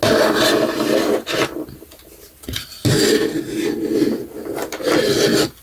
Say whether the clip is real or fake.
real